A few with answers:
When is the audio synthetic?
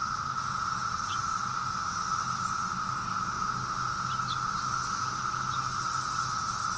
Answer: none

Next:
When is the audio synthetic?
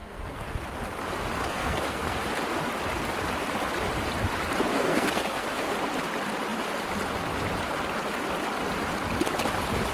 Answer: 0.0-0.6 (codec, SNAC); 1.4-2.2; 4.7-5.7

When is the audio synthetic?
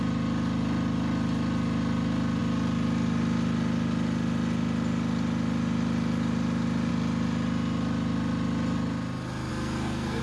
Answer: 9.5-10.2 (codec, SNAC)